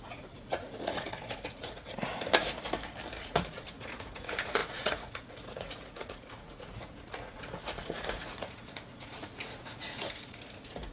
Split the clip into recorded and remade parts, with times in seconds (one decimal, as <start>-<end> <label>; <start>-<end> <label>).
0.0-2.1 remade; 2.1-3.2 recorded; 3.2-10.9 remade